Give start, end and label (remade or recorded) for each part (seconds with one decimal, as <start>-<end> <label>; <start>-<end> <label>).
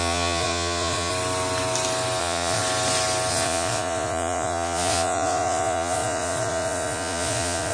0.0-1.1 remade; 1.1-2.2 recorded; 2.2-2.6 remade; 2.6-3.3 recorded; 3.3-7.7 remade